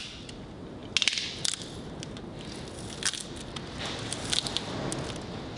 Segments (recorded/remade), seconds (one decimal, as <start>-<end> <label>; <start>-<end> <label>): 0.0-5.6 recorded